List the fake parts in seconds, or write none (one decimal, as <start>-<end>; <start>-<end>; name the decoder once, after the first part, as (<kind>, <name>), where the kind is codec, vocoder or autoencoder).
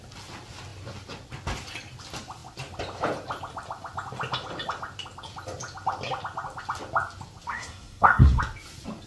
7.5-8.4 (codec, SNAC)